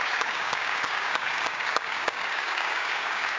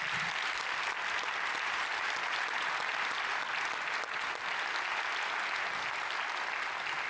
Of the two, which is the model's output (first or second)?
first